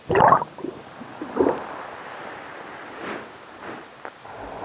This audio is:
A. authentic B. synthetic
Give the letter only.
A